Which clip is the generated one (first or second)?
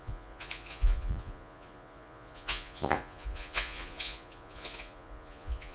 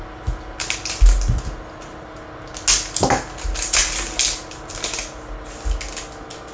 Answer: first